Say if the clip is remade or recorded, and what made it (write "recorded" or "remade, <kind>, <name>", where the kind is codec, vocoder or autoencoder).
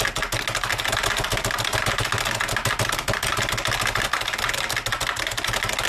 recorded